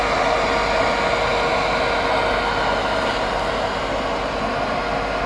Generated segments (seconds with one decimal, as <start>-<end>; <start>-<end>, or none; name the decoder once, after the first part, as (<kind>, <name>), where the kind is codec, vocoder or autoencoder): none